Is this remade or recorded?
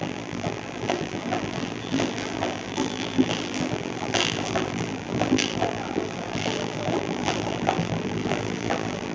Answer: remade